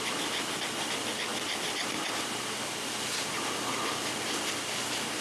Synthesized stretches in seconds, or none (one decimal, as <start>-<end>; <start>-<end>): none